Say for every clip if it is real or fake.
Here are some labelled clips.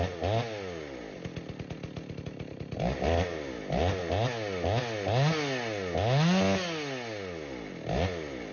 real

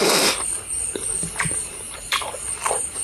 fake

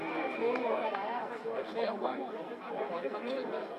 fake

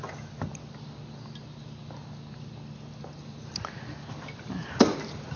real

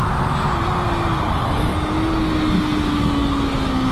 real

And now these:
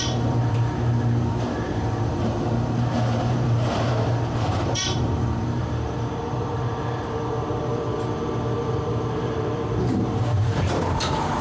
fake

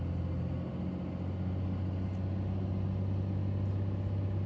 real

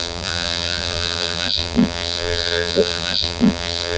fake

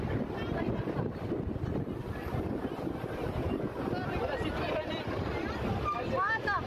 real